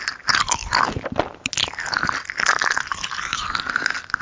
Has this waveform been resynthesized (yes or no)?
no